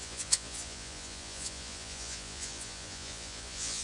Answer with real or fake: fake